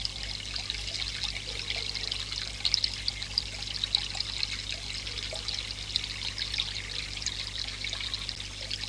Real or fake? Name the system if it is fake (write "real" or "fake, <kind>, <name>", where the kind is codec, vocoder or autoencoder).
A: real